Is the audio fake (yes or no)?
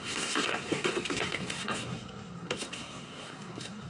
yes